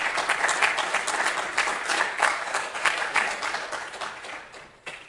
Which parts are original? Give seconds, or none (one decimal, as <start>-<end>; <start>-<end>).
0.0-1.7; 3.4-5.1